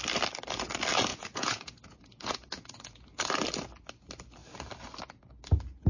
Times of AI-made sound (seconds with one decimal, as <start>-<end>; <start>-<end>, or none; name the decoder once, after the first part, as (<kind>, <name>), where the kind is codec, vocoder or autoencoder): 1.1-3.3 (vocoder, Vocos)